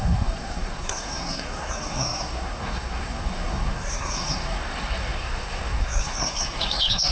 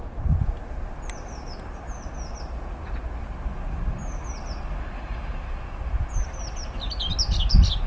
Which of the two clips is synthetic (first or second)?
first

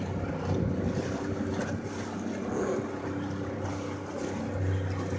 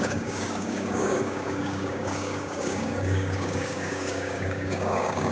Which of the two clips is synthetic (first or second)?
second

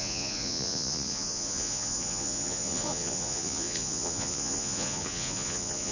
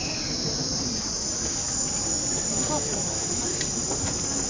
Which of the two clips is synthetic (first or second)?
first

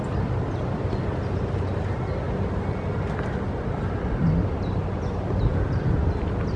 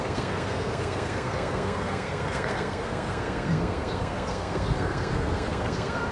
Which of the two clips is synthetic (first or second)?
second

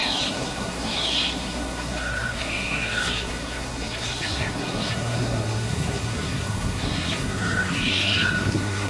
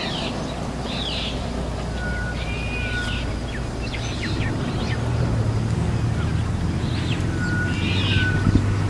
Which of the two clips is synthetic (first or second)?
first